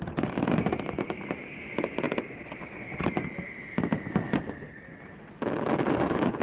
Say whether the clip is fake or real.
real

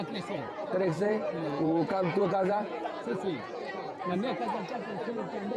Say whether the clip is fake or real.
fake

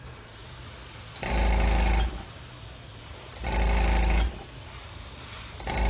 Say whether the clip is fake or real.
real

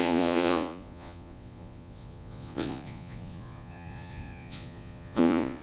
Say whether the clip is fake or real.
fake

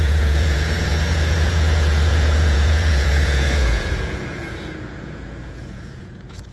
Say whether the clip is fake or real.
fake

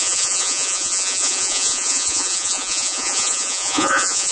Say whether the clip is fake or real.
fake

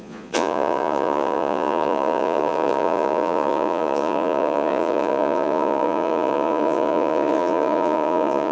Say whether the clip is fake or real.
fake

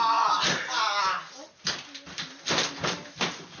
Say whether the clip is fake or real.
real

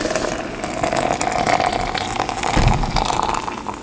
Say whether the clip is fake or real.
real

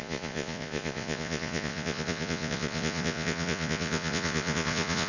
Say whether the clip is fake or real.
fake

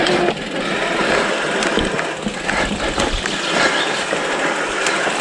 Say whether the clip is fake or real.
real